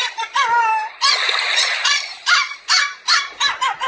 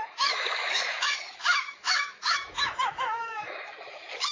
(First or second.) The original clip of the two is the first